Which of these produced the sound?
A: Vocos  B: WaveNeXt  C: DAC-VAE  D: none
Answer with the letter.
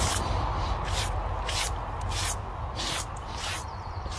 D